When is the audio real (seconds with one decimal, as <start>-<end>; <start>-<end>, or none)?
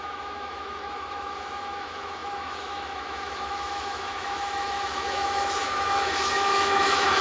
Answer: none